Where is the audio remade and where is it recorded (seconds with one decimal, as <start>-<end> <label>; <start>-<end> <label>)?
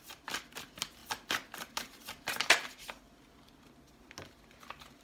0.0-5.0 recorded